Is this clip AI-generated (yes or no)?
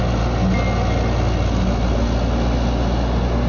no